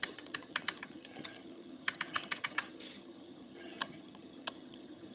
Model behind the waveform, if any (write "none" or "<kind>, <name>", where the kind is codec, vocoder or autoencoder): vocoder, HiFi-GAN